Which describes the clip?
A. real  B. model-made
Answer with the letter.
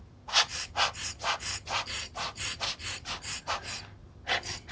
A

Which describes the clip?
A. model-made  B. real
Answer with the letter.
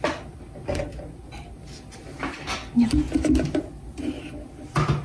B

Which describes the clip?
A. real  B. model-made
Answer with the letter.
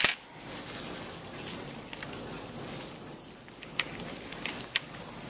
A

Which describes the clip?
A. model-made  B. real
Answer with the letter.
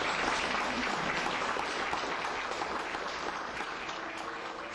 B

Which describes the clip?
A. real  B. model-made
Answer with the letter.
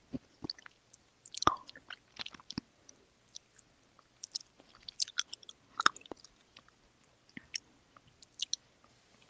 A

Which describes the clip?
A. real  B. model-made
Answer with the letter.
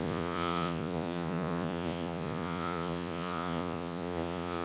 B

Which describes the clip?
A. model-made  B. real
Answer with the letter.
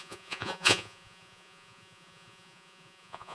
A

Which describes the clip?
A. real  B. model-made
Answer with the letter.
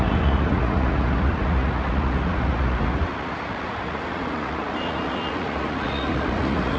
B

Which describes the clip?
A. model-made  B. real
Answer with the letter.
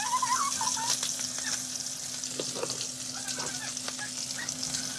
B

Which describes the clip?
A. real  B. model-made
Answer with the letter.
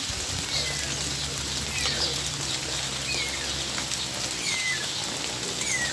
A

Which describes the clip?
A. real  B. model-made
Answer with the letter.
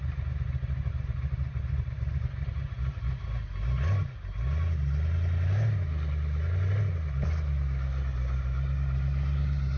A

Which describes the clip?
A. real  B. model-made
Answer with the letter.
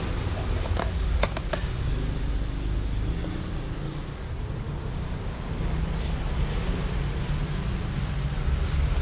A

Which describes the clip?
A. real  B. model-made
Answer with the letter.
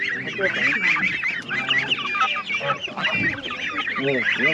A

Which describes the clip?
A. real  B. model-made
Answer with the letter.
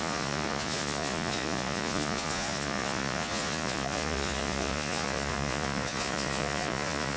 B